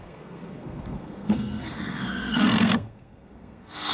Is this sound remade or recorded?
remade